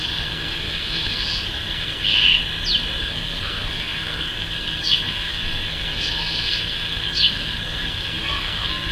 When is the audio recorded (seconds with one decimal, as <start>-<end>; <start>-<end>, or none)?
2.4-3.0